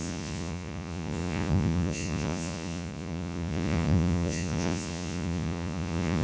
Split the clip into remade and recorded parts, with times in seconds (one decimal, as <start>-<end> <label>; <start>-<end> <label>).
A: 0.0-6.2 remade